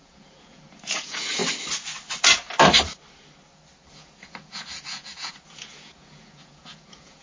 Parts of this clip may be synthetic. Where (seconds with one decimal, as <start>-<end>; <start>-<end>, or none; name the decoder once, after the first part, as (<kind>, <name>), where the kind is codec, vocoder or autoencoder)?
0.0-1.4 (vocoder, Vocos); 3.9-7.2